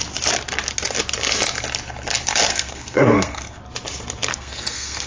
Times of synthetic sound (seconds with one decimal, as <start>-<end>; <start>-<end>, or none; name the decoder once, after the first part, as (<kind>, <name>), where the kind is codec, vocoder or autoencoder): 2.5-3.6 (codec, SNAC); 4.3-5.1